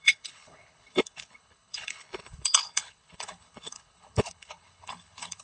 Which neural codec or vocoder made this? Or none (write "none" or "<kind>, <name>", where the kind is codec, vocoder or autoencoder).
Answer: codec, HILCodec